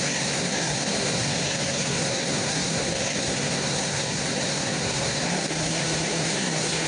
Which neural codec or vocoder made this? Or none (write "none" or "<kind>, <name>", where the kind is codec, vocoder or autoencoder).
codec, SNAC